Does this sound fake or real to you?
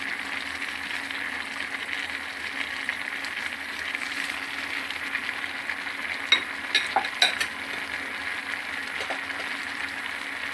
real